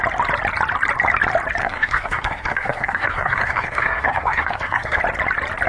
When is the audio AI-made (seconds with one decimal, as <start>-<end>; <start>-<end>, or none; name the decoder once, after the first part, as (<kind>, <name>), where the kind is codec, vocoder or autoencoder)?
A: 1.6-5.0 (codec, SNAC)